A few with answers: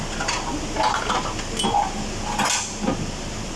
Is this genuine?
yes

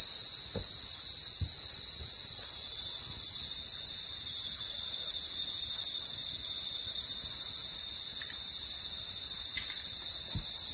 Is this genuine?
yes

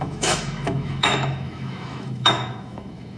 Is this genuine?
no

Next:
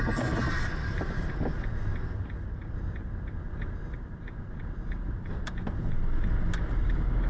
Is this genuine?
yes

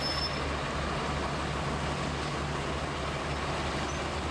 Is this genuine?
yes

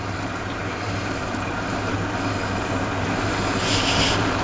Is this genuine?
no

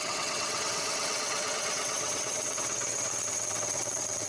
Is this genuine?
no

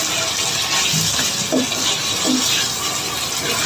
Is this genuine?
yes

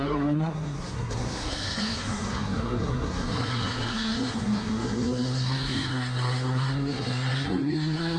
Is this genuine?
no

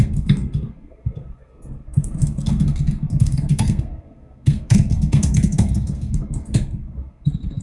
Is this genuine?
no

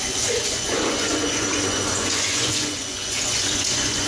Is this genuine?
no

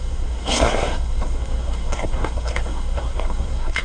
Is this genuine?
no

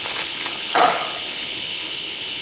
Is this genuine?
no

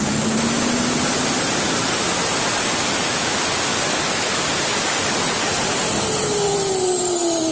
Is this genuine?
yes